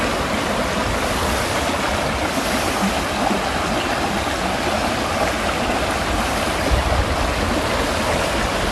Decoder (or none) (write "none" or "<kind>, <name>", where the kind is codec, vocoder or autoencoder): none